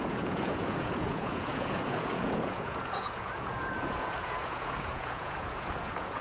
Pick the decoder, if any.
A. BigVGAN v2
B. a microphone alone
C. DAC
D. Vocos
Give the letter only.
D